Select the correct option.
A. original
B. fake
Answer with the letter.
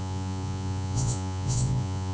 B